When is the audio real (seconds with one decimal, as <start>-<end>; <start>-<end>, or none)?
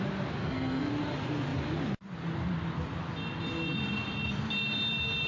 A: 0.0-0.4; 0.9-5.3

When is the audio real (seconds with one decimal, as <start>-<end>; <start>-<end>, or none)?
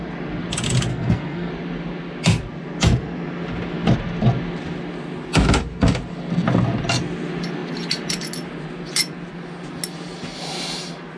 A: 0.0-0.9; 1.5-11.2